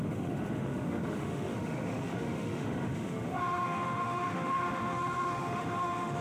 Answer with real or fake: fake